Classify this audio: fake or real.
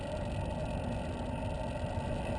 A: real